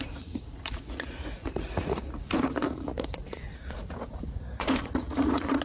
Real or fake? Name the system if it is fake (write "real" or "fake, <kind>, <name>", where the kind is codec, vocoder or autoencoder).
fake, vocoder, Vocos